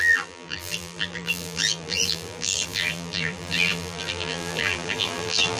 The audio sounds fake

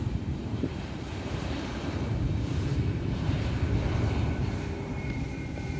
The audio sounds fake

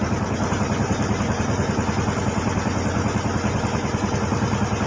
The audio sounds real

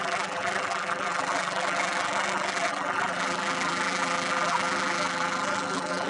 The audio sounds fake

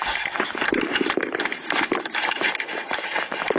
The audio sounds real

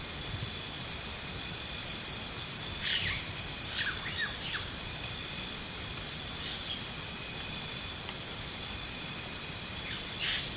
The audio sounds real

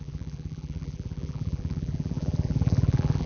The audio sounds fake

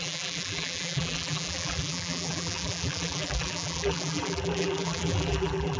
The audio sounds fake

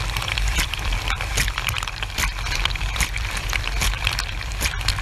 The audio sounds fake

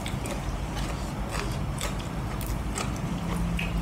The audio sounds real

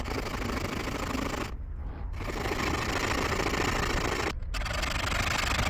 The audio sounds real